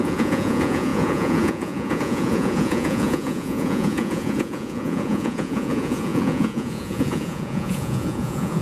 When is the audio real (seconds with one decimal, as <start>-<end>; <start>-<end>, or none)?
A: none